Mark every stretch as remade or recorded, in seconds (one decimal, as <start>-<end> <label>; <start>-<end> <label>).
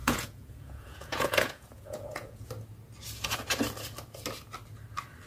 0.0-2.5 remade; 2.5-5.3 recorded